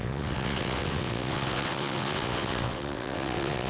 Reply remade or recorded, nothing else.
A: remade